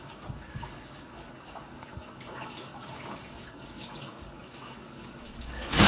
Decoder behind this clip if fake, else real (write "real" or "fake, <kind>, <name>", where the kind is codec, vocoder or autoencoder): fake, codec, DAC